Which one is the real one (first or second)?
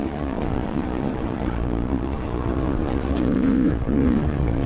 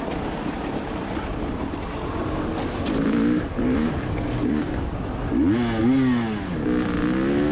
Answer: second